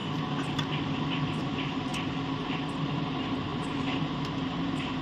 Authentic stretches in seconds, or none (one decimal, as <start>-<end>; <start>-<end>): 0.0-1.2; 1.9-2.7